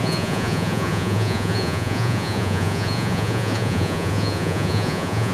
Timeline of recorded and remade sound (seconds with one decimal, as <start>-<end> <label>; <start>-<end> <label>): 0.0-5.3 remade